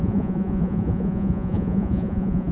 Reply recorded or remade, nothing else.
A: remade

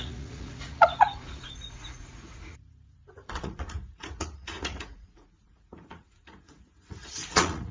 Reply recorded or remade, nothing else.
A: remade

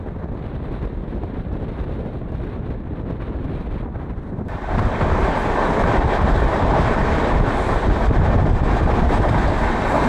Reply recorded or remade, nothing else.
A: recorded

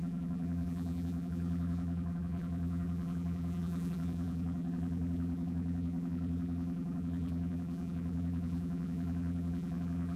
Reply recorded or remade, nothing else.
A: remade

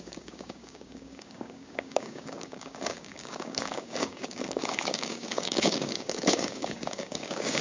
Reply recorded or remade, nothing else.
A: remade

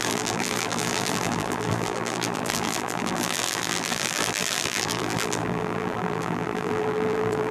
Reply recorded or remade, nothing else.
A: remade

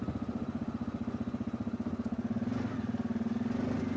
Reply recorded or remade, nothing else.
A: recorded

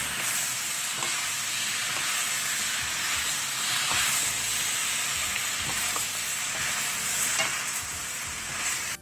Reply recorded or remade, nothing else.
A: recorded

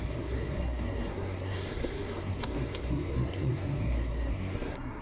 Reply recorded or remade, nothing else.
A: remade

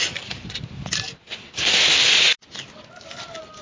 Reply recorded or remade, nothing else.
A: recorded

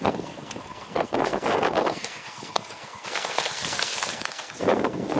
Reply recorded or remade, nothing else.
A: remade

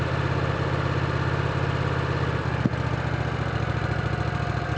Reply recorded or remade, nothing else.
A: recorded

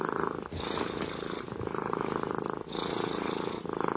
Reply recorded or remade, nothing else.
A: recorded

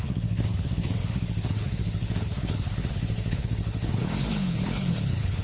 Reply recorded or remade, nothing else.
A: remade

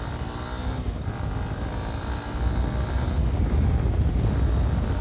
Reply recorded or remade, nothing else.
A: recorded